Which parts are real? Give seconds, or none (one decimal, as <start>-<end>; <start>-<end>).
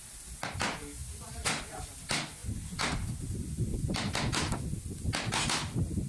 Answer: 0.0-6.1